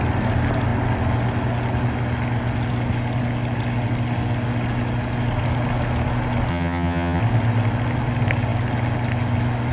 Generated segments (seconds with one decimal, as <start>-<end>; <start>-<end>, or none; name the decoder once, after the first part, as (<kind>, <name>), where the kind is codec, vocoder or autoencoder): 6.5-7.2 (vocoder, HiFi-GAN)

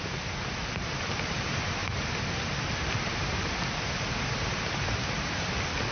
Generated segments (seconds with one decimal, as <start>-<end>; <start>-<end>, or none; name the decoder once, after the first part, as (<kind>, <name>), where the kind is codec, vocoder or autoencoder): 0.0-1.8 (vocoder, BigVGAN v2); 2.6-5.9

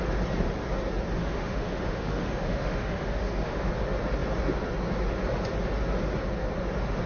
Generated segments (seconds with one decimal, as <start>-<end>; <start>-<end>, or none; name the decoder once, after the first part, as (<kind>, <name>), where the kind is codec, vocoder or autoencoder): 1.2-3.7 (autoencoder, DAC-VAE)